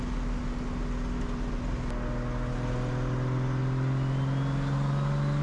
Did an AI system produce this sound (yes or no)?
no